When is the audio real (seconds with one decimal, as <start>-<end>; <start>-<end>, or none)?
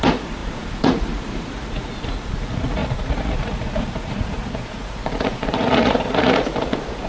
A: none